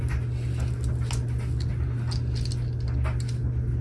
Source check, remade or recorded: recorded